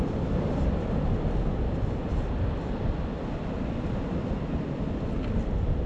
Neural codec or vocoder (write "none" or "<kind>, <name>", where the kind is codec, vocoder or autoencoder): none